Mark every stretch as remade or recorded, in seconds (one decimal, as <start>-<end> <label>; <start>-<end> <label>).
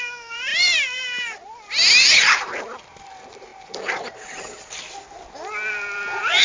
0.0-3.5 remade; 3.5-5.7 recorded; 5.7-6.4 remade